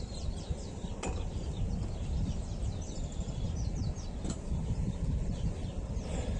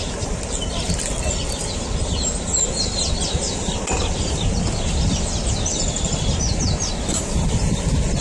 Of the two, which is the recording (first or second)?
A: second